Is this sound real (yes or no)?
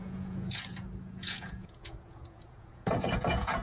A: no